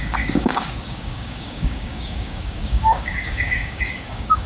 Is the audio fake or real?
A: fake